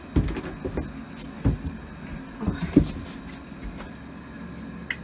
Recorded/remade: recorded